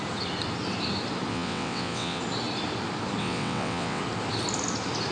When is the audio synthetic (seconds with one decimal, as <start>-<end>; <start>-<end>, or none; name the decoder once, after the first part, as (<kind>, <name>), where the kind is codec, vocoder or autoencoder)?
1.3-2.2 (vocoder, WaveNeXt); 3.2-4.0

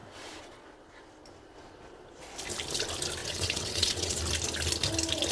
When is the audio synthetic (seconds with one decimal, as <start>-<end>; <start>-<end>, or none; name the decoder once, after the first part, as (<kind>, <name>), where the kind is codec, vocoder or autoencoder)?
3.2-4.2 (vocoder, WaveNeXt)